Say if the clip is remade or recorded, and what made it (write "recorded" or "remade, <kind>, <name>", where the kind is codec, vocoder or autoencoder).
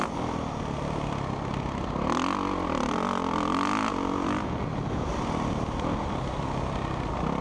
recorded